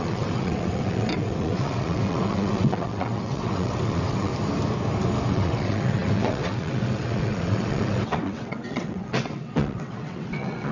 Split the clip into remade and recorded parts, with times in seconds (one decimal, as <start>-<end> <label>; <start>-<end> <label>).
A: 0.0-4.3 remade; 4.3-5.3 recorded; 5.3-10.7 remade